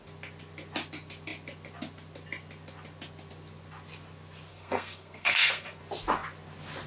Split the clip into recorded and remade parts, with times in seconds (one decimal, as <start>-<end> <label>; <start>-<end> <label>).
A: 0.0-4.5 recorded; 4.5-5.8 remade; 5.8-6.9 recorded